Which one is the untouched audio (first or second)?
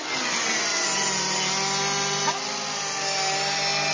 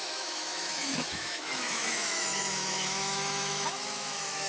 first